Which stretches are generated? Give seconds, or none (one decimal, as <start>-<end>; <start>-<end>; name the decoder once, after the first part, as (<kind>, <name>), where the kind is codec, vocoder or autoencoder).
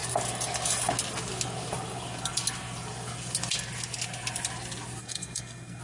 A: 5.0-5.8 (codec, SNAC)